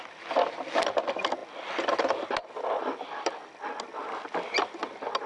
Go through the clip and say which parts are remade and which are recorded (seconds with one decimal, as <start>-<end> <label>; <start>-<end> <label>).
0.0-5.3 recorded